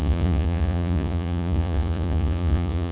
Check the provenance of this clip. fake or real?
fake